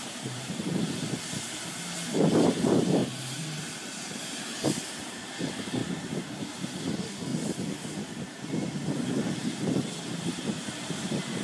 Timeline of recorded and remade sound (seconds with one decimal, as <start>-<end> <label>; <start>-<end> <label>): 0.0-7.3 remade; 7.3-8.5 recorded; 8.5-11.4 remade